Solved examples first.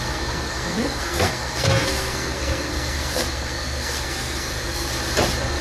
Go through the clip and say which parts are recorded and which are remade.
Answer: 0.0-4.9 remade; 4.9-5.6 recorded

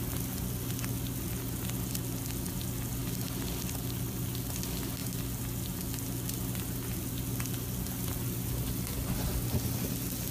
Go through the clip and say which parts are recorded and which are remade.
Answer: 0.0-10.3 recorded

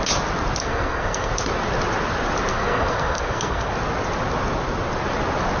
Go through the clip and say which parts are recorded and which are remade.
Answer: 0.0-0.6 recorded; 0.6-1.3 remade; 1.3-2.5 recorded; 2.5-3.7 remade; 3.7-5.6 recorded

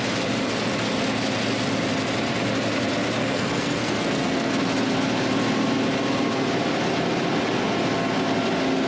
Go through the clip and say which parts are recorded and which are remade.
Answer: 0.0-3.2 recorded; 3.2-4.5 remade; 4.5-8.9 recorded

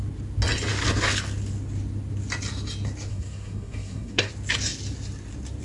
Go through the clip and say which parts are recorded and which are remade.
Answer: 0.0-3.1 recorded; 3.1-4.3 remade; 4.3-5.6 recorded